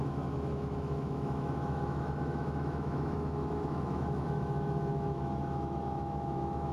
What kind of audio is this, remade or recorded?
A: remade